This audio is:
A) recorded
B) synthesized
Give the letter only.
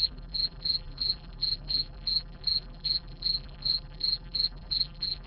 B